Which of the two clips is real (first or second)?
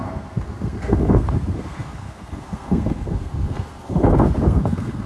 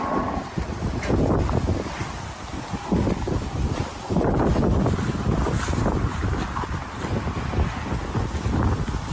second